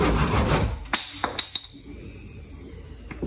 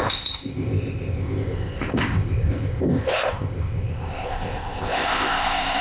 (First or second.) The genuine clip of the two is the first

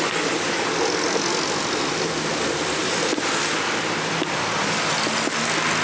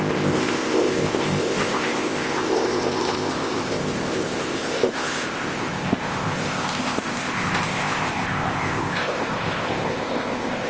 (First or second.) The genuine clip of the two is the first